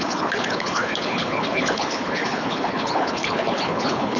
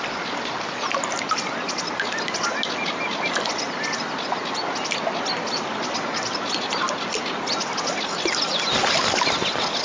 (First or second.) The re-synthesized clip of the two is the first